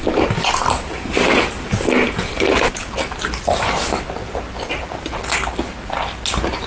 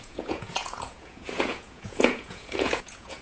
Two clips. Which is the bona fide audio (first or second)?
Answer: first